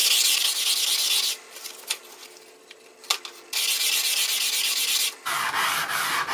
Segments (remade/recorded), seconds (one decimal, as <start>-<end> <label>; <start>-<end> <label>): 0.0-6.3 recorded